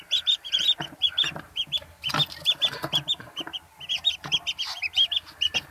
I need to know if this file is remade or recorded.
recorded